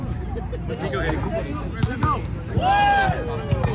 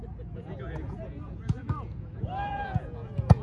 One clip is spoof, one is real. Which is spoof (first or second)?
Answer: second